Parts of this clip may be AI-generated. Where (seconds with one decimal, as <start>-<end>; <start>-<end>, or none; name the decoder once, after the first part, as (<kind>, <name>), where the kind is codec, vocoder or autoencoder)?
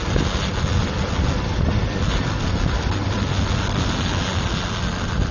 none